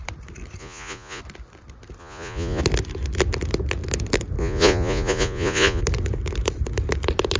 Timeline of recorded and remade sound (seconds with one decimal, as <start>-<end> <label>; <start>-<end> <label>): 0.0-0.6 recorded; 0.6-1.2 remade; 1.2-2.0 recorded; 2.0-2.6 remade; 2.6-4.4 recorded; 4.4-5.8 remade; 5.8-7.4 recorded